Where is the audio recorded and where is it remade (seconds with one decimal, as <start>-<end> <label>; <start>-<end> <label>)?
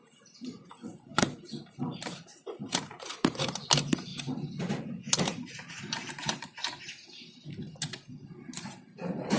0.0-4.1 remade; 4.1-5.0 recorded; 5.0-6.6 remade; 6.6-8.1 recorded; 8.1-9.4 remade